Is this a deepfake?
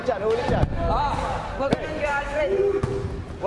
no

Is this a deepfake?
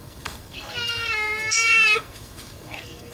yes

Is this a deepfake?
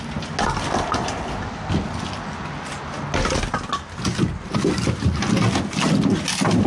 no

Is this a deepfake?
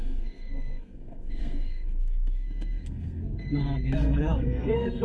yes